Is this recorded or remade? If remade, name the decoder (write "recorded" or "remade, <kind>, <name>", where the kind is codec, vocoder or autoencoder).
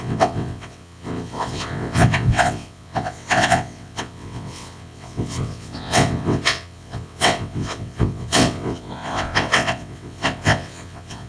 remade, vocoder, WaveNeXt